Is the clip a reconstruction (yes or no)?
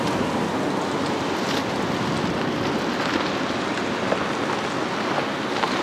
no